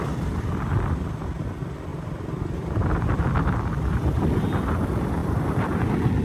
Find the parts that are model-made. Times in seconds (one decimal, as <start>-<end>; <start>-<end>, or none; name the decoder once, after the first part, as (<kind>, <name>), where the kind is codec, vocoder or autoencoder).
1.9-3.2 (vocoder, BigVGAN v2)

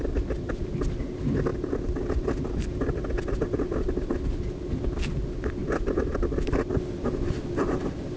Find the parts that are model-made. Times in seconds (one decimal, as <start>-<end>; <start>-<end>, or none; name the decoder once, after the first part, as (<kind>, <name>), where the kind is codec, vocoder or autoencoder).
1.5-2.1 (vocoder, BigVGAN v2)